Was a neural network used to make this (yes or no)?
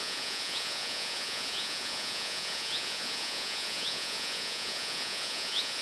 yes